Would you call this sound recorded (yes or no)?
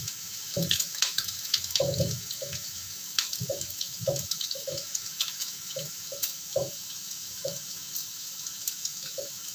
no